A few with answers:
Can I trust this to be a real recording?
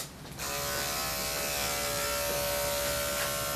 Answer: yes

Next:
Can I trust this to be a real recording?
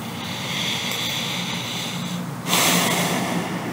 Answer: yes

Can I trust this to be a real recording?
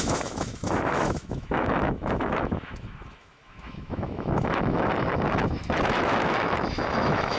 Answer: no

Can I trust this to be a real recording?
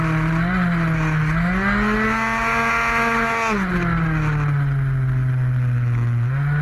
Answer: yes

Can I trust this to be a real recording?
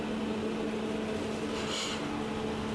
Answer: yes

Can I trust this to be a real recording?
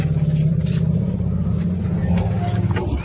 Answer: yes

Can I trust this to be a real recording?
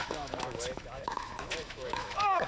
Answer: no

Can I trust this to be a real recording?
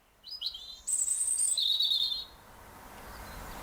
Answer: yes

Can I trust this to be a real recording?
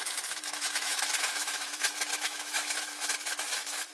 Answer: no